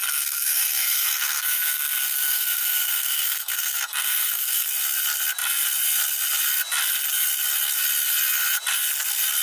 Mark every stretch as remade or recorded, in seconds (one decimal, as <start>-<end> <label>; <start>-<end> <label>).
0.0-4.7 remade; 4.7-9.4 recorded